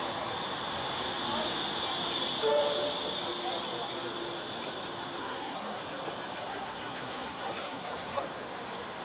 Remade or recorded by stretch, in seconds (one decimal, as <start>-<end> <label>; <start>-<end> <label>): 0.0-5.2 recorded; 5.2-5.8 remade; 5.8-6.4 recorded; 6.4-8.2 remade; 8.2-9.0 recorded